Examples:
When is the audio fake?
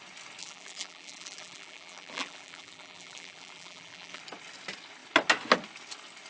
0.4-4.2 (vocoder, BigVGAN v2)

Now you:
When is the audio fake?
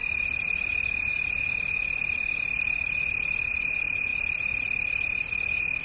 0.0-4.1 (vocoder, BigVGAN v2)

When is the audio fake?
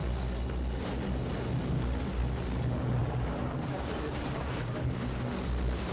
3.0-4.8 (vocoder, BigVGAN v2)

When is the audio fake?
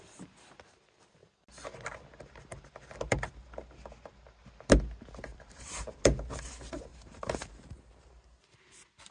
5.3-6.0 (vocoder, BigVGAN v2); 6.9-7.7